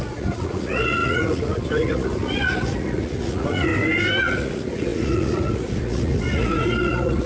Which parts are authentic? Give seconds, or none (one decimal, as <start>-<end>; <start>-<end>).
3.7-4.2